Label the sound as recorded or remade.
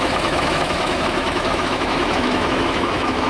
remade